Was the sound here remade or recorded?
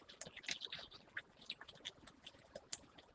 recorded